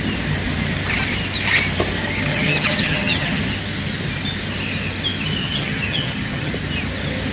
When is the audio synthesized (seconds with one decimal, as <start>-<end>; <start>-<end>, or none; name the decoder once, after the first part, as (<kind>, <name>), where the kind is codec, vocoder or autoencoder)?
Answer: 2.3-3.4 (vocoder, HiFi-GAN); 5.4-6.5